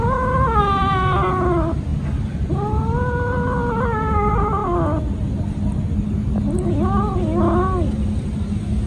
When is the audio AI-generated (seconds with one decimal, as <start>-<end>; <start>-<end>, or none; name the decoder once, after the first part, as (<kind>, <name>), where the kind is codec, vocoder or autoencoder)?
none